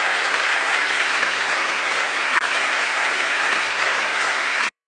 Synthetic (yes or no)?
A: yes